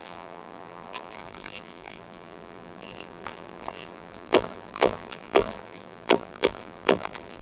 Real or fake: fake